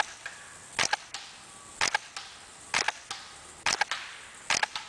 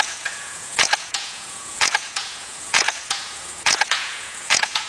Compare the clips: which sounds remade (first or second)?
second